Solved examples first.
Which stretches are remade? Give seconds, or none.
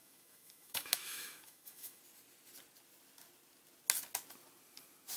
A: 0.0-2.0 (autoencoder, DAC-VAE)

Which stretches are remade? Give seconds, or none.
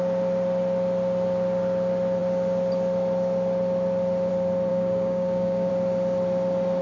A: 4.7-5.7 (codec, DAC)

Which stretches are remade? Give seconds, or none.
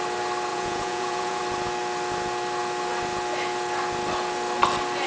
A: 0.5-1.4 (vocoder, Vocos)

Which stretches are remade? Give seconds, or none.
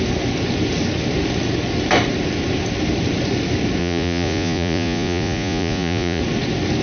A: 3.8-6.2 (vocoder, Vocos)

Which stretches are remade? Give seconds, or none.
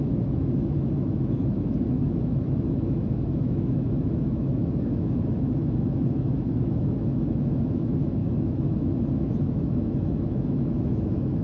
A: 0.0-11.4 (autoencoder, DAC-VAE)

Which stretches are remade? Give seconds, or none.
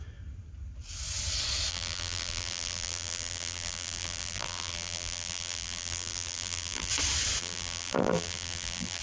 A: 1.7-6.9 (vocoder, BigVGAN v2); 7.4-9.0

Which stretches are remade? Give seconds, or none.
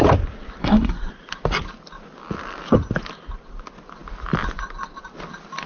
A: 0.6-1.1 (codec, SNAC)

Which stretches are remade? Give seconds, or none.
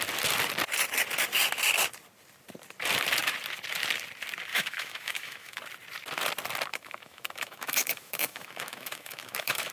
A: 4.5-5.6 (autoencoder, DAC-VAE); 6.7-9.7